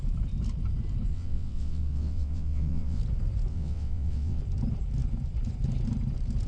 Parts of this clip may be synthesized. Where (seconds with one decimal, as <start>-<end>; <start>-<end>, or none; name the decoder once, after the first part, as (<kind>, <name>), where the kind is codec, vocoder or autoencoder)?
1.1-3.0 (vocoder, WaveNeXt); 3.5-4.4